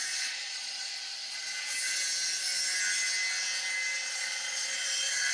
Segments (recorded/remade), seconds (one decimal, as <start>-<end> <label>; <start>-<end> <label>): 0.0-0.9 remade; 0.9-4.1 recorded; 4.1-5.3 remade